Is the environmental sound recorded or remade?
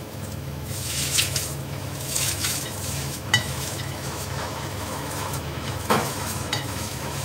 remade